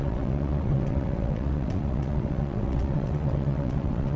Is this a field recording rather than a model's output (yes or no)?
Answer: no